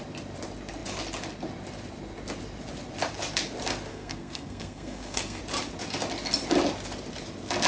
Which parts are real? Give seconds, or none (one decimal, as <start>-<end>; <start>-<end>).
0.0-3.9; 5.4-7.7